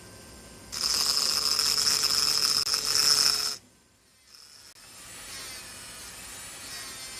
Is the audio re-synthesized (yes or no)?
no